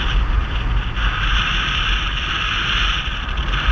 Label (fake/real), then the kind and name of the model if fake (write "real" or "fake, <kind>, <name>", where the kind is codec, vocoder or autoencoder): real